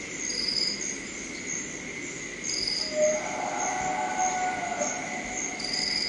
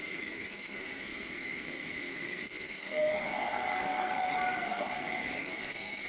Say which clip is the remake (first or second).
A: second